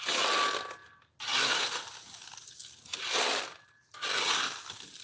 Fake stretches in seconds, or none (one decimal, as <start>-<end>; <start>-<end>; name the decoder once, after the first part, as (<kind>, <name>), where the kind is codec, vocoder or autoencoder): none

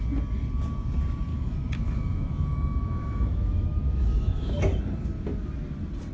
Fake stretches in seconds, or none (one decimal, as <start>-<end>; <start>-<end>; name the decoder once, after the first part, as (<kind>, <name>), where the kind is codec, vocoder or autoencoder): 1.3-4.5 (autoencoder, DAC-VAE)